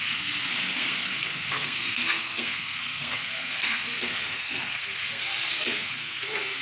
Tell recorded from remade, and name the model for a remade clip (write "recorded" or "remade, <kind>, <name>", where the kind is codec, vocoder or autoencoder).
remade, codec, SNAC